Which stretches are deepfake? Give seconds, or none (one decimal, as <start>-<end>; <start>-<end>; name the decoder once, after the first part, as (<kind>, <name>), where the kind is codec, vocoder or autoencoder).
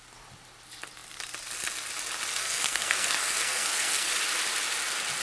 2.4-4.1 (codec, SNAC)